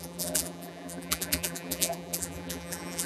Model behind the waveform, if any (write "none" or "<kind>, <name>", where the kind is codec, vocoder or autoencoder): vocoder, BigVGAN v2